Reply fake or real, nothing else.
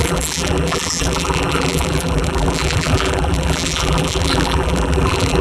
fake